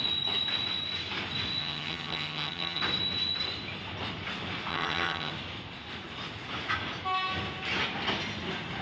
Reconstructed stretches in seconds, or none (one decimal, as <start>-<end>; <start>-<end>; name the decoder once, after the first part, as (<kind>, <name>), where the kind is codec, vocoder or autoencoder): 1.6-2.8 (vocoder, HiFi-GAN); 4.7-5.3